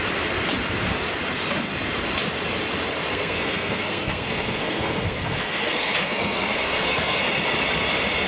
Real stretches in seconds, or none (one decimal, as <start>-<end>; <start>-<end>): 0.0-3.1; 7.2-8.3